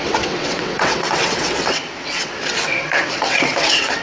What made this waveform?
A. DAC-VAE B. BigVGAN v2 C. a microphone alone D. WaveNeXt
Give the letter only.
D